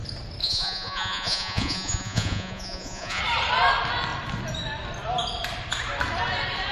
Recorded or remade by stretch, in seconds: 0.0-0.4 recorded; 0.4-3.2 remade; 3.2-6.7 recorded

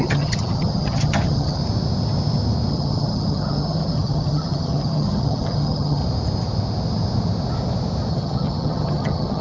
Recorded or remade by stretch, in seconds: 0.0-1.6 remade; 1.6-2.7 recorded; 2.7-6.0 remade; 6.0-8.1 recorded; 8.1-9.4 remade

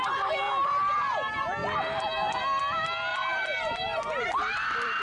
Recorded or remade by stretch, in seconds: 0.0-1.6 recorded; 1.6-2.4 remade; 2.4-3.1 recorded; 3.1-5.0 remade

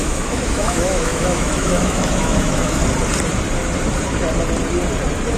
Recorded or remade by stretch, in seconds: 0.0-2.8 remade; 2.8-5.4 recorded

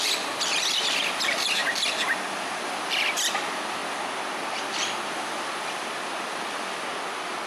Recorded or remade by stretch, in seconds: 0.0-1.6 remade; 1.6-2.9 recorded; 2.9-3.8 remade; 3.8-4.6 recorded; 4.6-7.5 remade

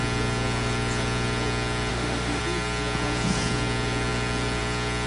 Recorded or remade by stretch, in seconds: 0.0-1.9 recorded; 1.9-2.4 remade; 2.4-5.1 recorded